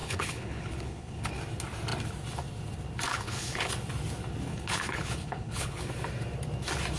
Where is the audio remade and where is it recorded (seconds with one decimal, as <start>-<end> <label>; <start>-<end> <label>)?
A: 0.0-1.3 remade; 1.3-3.1 recorded; 3.1-3.7 remade; 3.7-4.5 recorded; 4.5-5.8 remade; 5.8-7.0 recorded